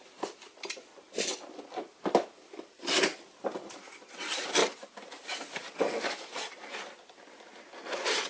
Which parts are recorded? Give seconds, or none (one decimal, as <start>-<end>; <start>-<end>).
0.9-2.7; 4.6-6.2